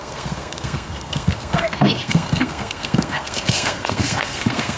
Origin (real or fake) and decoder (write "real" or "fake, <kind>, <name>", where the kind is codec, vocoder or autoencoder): fake, codec, SNAC